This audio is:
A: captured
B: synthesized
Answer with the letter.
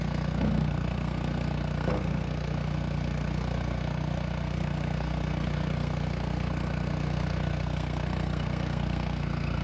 B